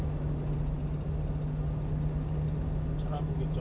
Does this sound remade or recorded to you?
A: recorded